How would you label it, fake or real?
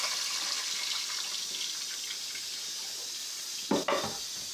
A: real